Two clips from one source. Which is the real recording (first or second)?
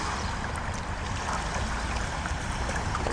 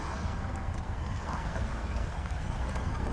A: first